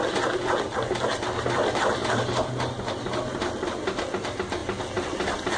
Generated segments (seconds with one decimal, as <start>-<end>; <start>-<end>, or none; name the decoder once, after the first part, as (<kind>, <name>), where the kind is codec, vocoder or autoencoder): none